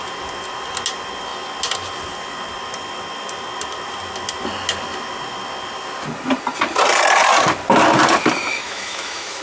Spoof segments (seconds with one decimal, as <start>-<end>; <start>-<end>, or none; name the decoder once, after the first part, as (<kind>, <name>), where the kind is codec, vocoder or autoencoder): 8.5-9.4 (autoencoder, DAC-VAE)